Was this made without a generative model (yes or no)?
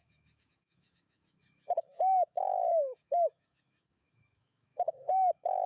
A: no